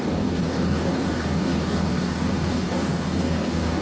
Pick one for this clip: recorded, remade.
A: remade